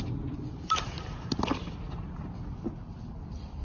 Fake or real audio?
real